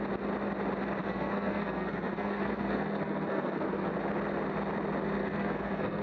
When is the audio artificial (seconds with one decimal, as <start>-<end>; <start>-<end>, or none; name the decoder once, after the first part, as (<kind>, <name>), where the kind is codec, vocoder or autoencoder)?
1.0-3.9 (codec, SNAC); 5.2-6.0